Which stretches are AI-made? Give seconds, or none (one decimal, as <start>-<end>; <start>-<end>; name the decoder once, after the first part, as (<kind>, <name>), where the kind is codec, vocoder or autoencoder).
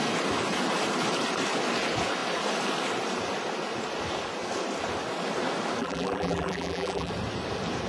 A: 5.8-7.1 (vocoder, BigVGAN v2)